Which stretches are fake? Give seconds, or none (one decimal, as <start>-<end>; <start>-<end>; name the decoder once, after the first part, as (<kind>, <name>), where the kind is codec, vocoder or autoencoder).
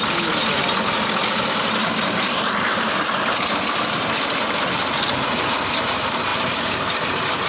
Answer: 1.8-2.9 (vocoder, BigVGAN v2); 6.3-7.5